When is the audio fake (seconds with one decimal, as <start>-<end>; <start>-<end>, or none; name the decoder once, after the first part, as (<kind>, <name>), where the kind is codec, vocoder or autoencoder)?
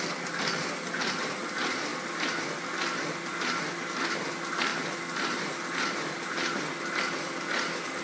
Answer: none